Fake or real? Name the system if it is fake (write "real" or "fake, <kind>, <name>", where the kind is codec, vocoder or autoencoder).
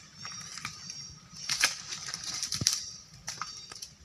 fake, vocoder, BigVGAN v2